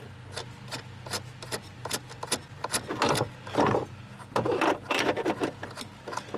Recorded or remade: recorded